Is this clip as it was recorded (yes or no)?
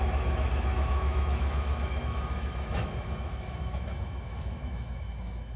no